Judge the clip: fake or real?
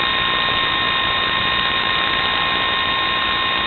real